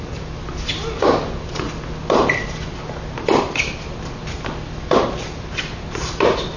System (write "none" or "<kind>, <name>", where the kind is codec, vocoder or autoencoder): none